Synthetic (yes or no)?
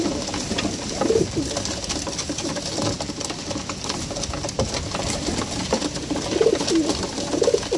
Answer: no